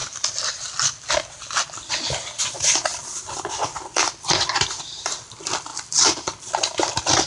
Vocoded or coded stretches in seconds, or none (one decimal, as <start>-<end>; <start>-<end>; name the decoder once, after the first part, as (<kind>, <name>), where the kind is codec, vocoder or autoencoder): 0.0-2.1 (vocoder, BigVGAN v2); 5.7-6.5